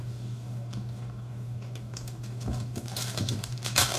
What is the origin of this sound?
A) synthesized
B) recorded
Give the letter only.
A